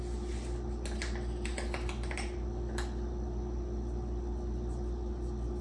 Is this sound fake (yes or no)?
no